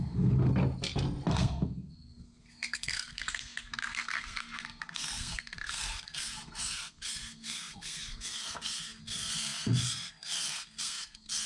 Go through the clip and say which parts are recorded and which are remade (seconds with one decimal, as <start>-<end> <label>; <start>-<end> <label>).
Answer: 0.0-0.5 remade; 0.5-1.3 recorded; 1.3-11.5 remade